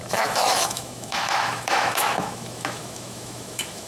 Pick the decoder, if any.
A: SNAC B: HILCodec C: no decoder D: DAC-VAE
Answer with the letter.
D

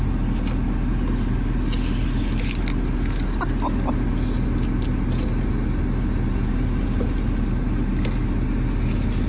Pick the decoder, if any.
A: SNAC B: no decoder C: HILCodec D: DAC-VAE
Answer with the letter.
B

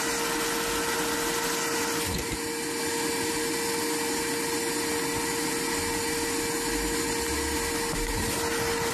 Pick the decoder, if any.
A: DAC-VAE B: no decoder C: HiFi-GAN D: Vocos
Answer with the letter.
B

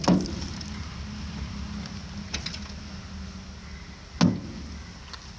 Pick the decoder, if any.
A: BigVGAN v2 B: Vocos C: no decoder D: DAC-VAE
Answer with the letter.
C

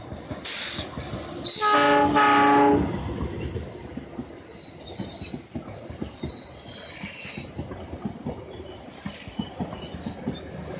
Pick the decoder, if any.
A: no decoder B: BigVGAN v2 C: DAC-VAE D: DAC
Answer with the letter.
A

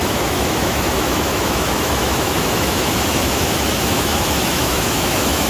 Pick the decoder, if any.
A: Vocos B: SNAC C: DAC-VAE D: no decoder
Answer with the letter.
C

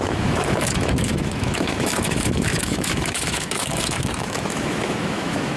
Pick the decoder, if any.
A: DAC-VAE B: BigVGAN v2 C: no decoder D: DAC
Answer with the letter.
A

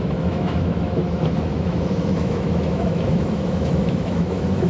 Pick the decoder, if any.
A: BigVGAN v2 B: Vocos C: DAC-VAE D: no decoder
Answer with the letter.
C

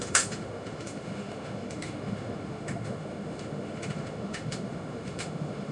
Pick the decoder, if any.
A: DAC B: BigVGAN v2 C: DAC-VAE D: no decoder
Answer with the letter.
C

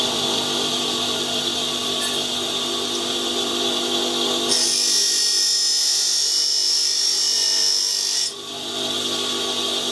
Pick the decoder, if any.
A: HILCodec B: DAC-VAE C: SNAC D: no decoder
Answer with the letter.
D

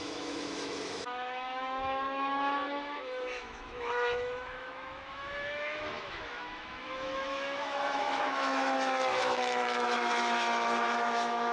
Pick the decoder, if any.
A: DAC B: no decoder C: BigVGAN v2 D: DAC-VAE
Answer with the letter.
D